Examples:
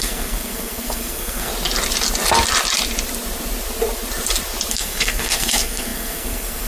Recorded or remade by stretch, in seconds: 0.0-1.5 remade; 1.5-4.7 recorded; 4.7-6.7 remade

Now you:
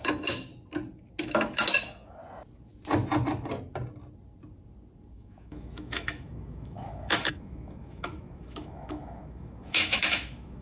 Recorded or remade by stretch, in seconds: 0.0-0.5 remade; 0.5-1.2 recorded; 1.2-2.2 remade; 2.2-5.1 recorded; 5.1-10.6 remade

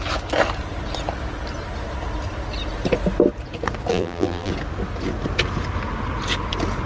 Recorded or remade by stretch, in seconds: 0.0-3.9 recorded; 3.9-4.5 remade; 4.5-6.9 recorded

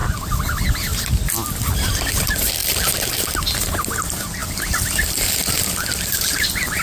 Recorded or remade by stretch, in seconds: 0.0-6.8 recorded